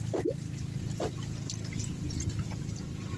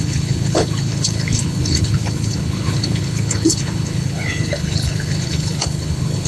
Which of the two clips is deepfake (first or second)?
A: second